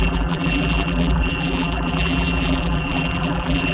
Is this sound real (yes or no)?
no